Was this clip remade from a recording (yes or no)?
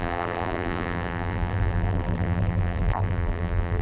yes